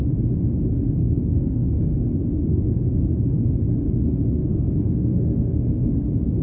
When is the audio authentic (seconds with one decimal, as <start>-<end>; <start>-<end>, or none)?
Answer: 0.0-1.0; 2.6-4.5; 5.9-6.4